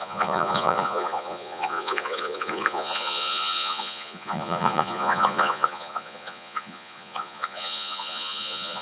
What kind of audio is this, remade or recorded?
remade